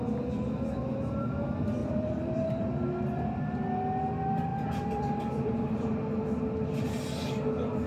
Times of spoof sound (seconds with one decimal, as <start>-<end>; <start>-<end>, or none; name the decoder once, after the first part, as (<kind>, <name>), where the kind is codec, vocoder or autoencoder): 1.8-2.7 (vocoder, BigVGAN v2); 4.5-6.0